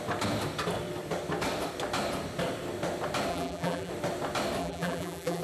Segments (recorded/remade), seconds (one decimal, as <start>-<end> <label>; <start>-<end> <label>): 0.0-3.3 recorded; 3.3-3.9 remade; 3.9-4.6 recorded; 4.6-5.4 remade